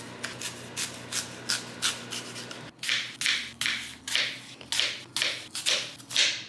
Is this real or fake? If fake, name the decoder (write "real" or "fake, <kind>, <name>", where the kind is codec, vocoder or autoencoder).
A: real